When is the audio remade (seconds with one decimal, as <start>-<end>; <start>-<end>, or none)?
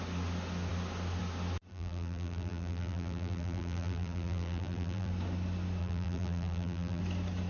1.7-5.1; 5.8-7.0